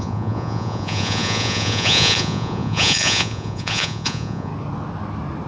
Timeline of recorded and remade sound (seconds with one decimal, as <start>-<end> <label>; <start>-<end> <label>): 0.0-4.5 remade; 4.5-5.5 recorded